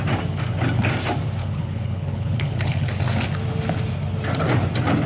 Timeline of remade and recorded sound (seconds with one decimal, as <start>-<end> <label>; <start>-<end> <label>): 0.0-1.4 recorded; 1.4-3.0 remade; 3.0-5.1 recorded